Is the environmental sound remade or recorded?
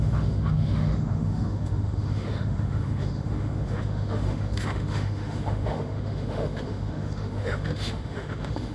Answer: remade